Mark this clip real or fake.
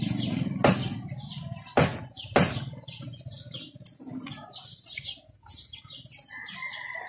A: real